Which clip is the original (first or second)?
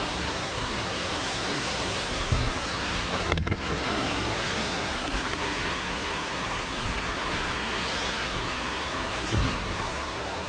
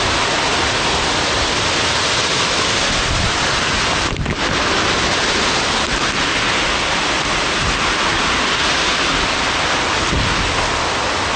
second